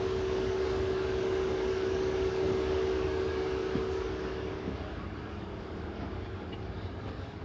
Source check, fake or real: fake